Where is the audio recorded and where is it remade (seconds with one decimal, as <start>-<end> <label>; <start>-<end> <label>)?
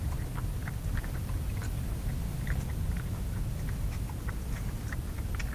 0.0-3.1 recorded; 3.1-4.1 remade; 4.1-5.5 recorded